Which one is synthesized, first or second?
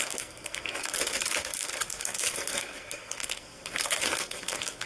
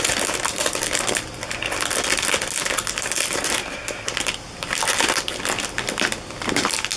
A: first